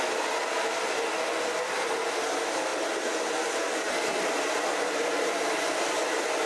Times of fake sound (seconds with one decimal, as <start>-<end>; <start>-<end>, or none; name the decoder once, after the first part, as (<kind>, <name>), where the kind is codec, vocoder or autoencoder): 0.0-2.7 (vocoder, BigVGAN v2); 3.5-6.5